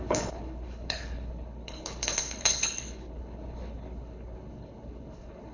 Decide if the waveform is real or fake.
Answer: fake